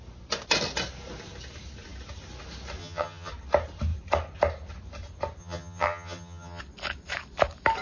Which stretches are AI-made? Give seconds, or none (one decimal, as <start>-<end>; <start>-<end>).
2.8-3.3; 5.4-6.6